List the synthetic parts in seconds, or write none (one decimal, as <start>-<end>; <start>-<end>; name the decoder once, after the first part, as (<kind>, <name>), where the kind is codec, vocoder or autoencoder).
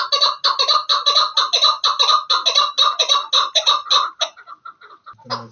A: none